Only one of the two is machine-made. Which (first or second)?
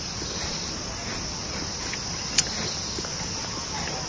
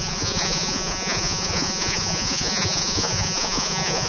second